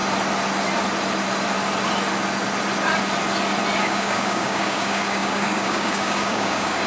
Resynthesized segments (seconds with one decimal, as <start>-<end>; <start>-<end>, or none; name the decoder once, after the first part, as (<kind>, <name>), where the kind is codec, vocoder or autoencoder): 3.8-6.9 (codec, DAC)